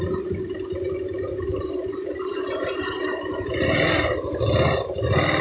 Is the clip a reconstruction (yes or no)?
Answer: no